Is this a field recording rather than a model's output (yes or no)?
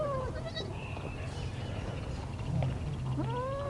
yes